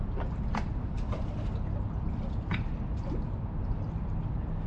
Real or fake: real